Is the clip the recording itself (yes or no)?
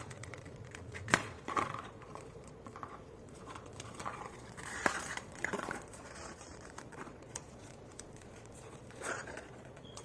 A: no